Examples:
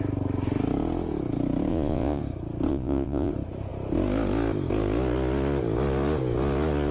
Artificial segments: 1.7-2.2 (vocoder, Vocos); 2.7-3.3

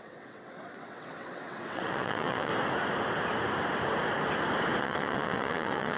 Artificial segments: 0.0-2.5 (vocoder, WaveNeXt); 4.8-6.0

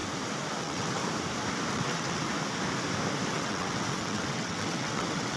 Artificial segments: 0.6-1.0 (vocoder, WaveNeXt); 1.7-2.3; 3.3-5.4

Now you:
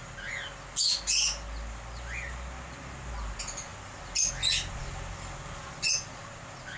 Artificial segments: none

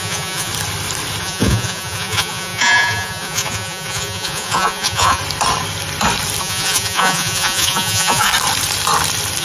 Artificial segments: 0.0-0.5 (vocoder, Vocos); 1.2-5.2; 6.4-8.3

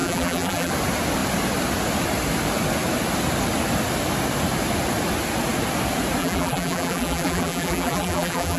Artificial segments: 0.0-0.7 (vocoder, BigVGAN v2); 6.2-8.6